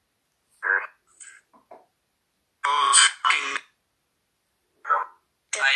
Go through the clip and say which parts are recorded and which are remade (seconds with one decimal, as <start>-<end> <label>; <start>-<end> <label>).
0.0-5.8 recorded